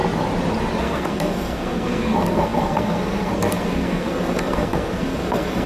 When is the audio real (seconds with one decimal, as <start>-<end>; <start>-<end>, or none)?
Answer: 0.0-0.8